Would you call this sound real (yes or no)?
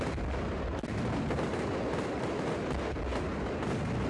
yes